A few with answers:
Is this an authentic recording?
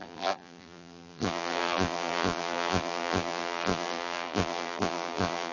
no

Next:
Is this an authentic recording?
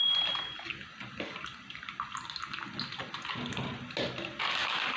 yes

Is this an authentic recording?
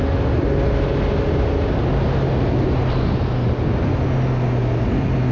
yes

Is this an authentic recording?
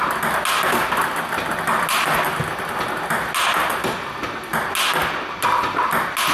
yes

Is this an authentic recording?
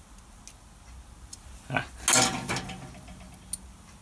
yes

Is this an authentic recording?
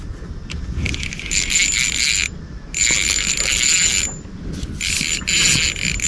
yes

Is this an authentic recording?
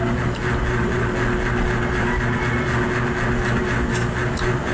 yes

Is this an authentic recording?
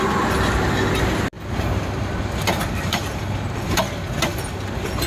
yes